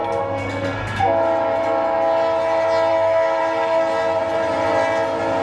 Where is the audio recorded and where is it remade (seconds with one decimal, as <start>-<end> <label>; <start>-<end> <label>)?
0.0-1.0 remade; 1.0-2.9 recorded; 2.9-3.4 remade; 3.4-5.4 recorded